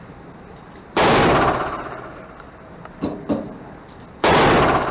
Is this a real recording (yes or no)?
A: yes